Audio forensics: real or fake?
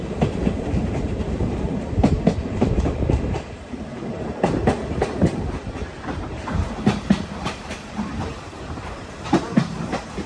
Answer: fake